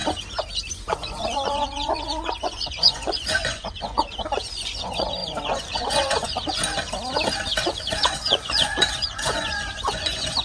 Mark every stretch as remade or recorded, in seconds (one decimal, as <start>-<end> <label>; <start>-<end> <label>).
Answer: 0.0-0.7 recorded; 0.7-6.6 remade; 6.6-7.6 recorded; 7.6-10.4 remade